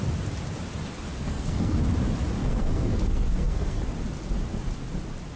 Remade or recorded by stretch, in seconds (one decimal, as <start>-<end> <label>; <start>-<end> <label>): 0.0-1.1 recorded; 1.1-1.8 remade; 1.8-2.4 recorded; 2.4-3.8 remade; 3.8-5.4 recorded